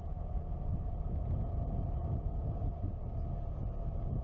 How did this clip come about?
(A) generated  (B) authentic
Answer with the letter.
B